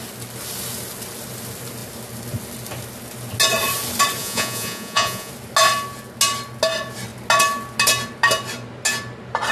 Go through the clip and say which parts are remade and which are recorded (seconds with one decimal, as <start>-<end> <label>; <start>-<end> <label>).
0.0-4.2 recorded; 4.2-5.3 remade; 5.3-9.5 recorded